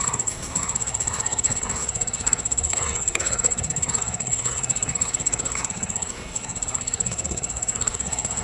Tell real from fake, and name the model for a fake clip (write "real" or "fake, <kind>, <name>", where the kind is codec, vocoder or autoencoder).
fake, codec, SNAC